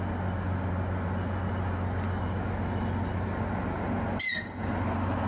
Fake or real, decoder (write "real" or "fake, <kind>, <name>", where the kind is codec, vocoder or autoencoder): real